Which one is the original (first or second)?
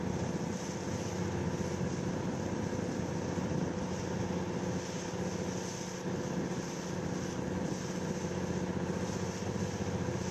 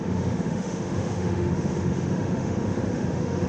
first